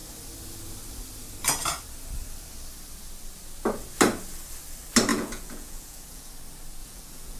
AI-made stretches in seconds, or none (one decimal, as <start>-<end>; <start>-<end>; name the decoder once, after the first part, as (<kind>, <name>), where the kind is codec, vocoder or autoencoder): 5.1-6.3 (vocoder, Vocos); 6.8-7.4